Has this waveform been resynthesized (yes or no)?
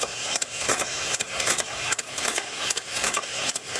yes